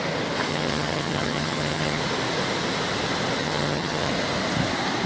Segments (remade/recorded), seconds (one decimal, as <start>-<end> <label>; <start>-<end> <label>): 0.0-0.5 recorded; 0.5-2.0 remade; 2.0-3.4 recorded; 3.4-4.1 remade; 4.1-5.1 recorded